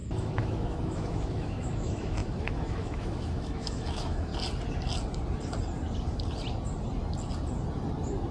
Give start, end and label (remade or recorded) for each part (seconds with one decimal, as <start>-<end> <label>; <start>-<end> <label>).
0.0-4.3 remade; 4.3-8.3 recorded